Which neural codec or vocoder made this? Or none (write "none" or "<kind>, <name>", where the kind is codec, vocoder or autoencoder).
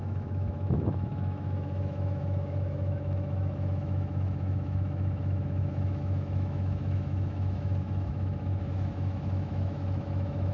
autoencoder, DAC-VAE